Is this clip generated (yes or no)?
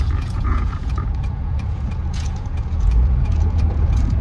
yes